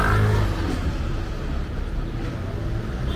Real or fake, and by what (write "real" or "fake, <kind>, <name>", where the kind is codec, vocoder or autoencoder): real